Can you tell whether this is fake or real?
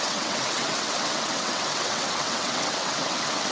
fake